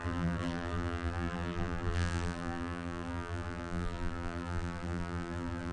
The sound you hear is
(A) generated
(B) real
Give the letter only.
A